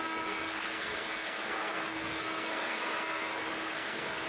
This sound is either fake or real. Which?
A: fake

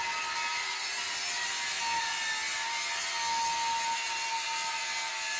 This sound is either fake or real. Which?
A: real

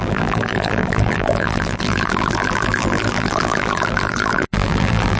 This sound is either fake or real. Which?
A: fake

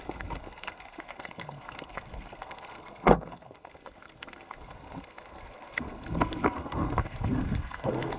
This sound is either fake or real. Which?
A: fake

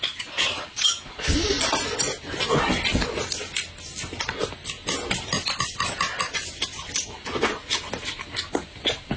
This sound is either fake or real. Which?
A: real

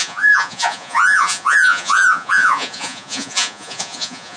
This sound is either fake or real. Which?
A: fake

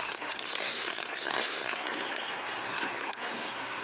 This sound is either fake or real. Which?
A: fake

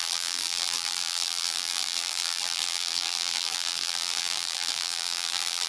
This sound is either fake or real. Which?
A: fake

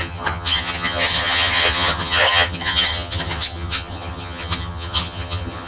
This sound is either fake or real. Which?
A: fake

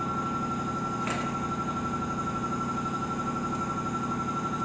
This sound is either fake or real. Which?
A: real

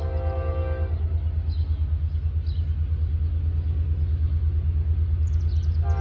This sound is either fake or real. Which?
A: real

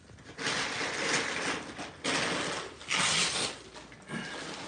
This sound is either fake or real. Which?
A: real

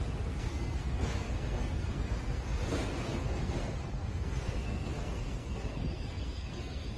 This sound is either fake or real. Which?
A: fake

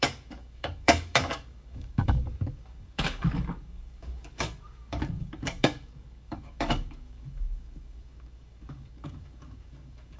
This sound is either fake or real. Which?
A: fake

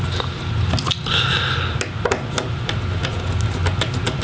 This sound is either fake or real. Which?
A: real